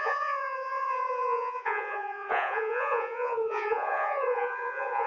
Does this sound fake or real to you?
fake